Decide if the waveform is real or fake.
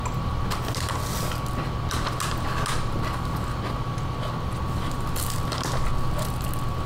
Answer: real